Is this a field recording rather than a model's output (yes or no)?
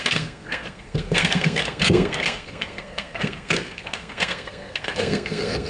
no